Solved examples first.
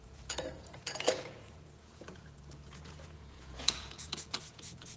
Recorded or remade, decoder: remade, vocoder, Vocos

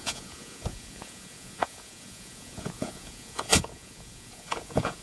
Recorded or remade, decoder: remade, vocoder, Vocos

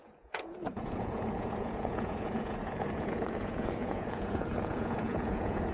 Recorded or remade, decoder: remade, vocoder, Vocos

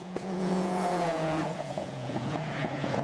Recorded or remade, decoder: remade, vocoder, Vocos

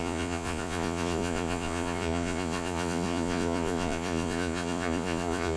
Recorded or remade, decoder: remade, vocoder, Vocos